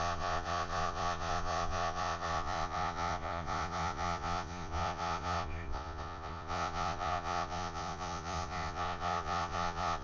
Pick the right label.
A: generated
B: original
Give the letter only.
A